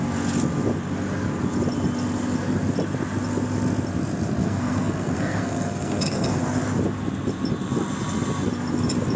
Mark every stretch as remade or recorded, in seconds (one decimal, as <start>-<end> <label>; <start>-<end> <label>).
0.0-4.4 recorded; 4.4-6.4 remade; 6.4-9.2 recorded

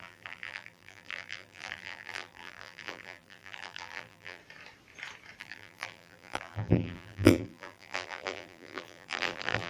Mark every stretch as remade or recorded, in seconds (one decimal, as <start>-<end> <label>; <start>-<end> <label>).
0.0-4.4 remade; 4.4-5.4 recorded; 5.4-9.7 remade

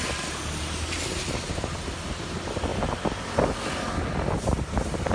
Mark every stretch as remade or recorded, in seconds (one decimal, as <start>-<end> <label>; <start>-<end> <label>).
0.0-5.1 recorded

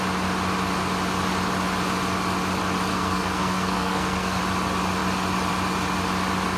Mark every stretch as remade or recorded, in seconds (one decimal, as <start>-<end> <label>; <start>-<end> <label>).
0.0-2.9 recorded; 2.9-4.4 remade; 4.4-6.6 recorded